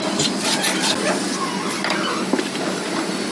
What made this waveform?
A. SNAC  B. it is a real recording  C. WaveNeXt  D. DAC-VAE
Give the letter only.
B